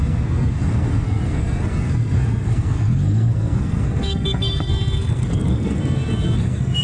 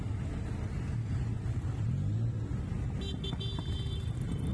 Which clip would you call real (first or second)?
second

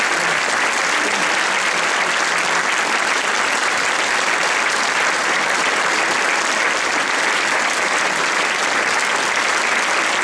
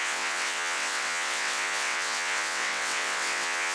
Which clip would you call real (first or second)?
first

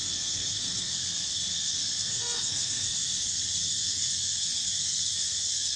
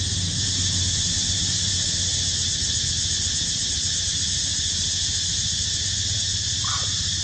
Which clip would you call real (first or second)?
second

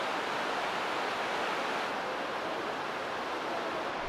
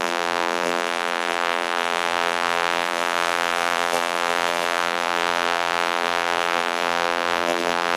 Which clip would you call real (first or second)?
first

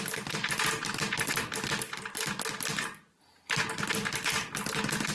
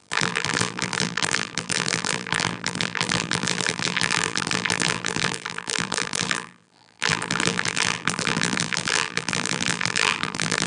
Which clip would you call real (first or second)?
first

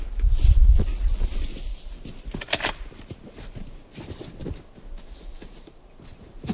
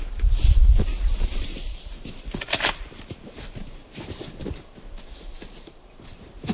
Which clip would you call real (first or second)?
first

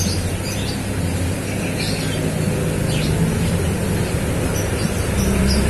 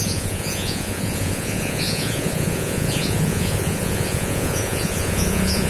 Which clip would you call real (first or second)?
first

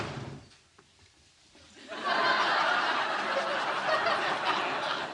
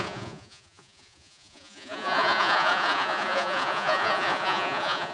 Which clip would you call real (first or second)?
first